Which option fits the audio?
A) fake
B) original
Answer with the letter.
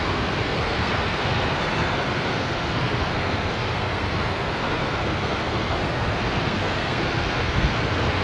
A